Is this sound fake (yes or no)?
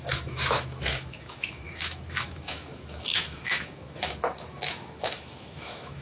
yes